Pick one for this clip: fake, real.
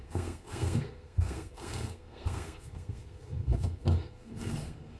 fake